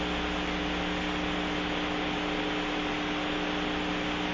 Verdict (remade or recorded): recorded